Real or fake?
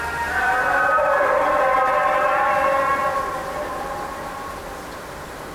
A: real